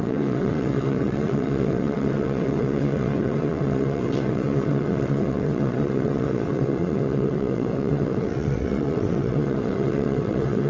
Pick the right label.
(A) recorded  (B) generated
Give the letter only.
B